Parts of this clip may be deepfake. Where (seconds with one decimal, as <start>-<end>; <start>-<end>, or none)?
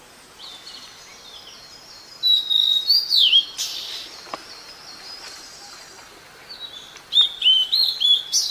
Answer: none